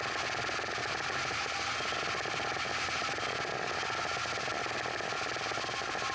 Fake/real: real